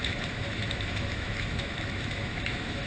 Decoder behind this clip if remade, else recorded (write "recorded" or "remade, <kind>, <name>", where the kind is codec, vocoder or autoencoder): remade, autoencoder, DAC-VAE